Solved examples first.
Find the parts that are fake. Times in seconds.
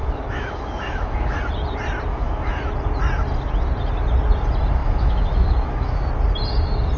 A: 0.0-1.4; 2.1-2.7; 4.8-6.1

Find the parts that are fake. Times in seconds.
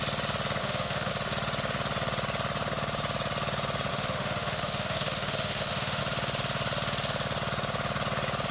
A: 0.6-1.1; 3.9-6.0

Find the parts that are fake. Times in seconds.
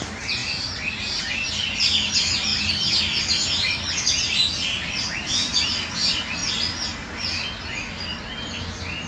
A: none